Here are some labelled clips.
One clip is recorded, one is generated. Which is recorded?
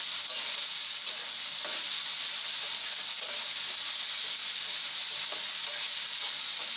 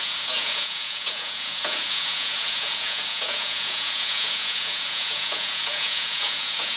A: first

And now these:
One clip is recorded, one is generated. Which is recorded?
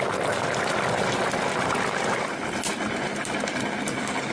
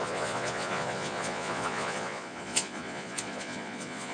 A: first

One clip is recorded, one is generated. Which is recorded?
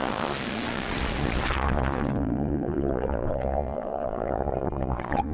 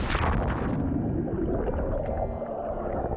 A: second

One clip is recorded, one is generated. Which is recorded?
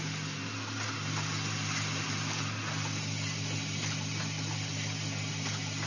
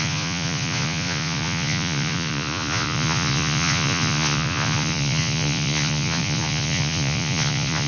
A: first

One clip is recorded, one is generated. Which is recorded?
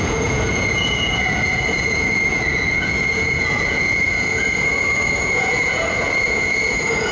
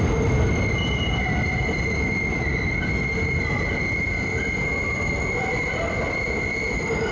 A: second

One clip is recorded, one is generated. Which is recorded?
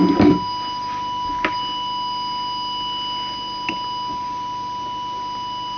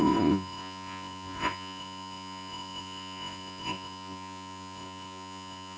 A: first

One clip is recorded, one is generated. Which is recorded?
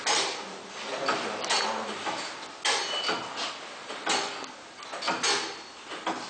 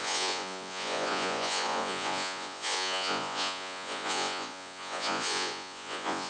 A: first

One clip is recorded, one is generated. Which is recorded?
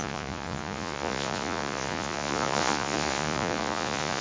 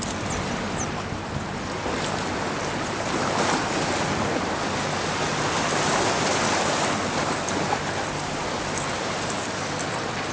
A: second